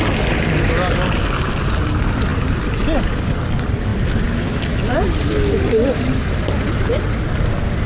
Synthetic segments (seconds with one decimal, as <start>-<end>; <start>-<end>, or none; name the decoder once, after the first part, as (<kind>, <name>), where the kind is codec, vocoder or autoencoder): none